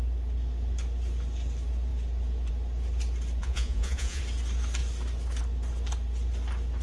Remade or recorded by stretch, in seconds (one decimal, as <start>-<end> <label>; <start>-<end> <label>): 0.0-3.4 recorded; 3.4-4.2 remade; 4.2-6.8 recorded